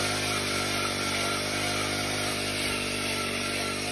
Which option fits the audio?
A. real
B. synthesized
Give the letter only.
B